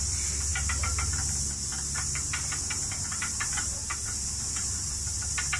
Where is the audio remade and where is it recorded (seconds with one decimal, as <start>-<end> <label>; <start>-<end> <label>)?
0.0-5.6 recorded